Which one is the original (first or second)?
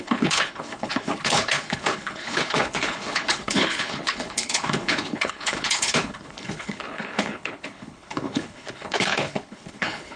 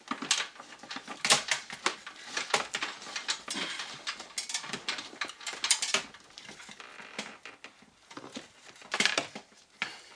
second